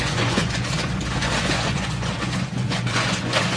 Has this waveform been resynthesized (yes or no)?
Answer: yes